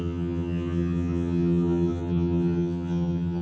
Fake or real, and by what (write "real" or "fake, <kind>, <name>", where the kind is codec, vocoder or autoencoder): fake, vocoder, HiFi-GAN